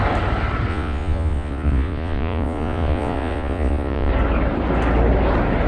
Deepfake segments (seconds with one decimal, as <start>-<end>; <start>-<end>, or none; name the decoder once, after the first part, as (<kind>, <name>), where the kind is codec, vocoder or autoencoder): 0.7-4.1 (vocoder, Vocos)